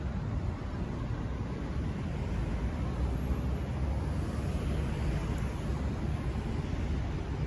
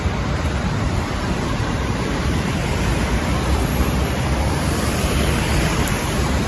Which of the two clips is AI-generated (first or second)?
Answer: second